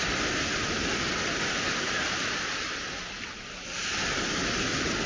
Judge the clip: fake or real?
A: real